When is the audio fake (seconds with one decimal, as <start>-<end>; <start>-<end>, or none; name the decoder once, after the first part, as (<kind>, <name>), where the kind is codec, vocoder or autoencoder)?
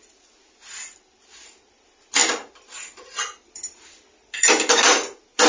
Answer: none